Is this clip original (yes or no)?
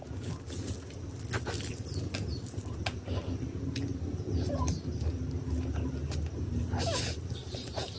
yes